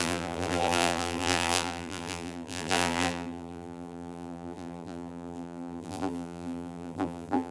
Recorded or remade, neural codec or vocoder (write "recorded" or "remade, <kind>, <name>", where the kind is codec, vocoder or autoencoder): remade, vocoder, BigVGAN v2